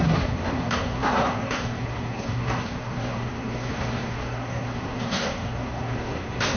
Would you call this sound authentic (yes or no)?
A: no